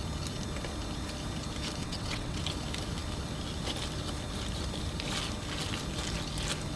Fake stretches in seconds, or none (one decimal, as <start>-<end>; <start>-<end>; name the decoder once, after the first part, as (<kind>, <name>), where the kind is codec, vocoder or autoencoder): 1.8-2.4 (vocoder, WaveNeXt)